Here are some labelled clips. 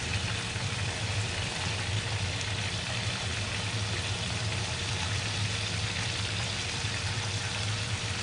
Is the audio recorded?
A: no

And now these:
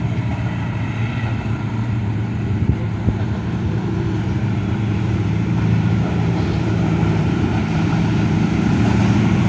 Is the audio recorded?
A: no